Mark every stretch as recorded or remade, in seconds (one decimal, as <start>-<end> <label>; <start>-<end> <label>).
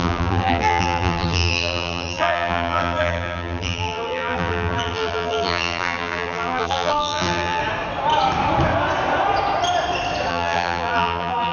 0.0-7.6 remade; 7.6-10.3 recorded; 10.3-11.5 remade